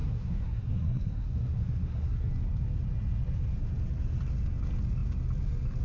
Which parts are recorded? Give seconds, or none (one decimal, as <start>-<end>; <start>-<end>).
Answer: 2.3-5.8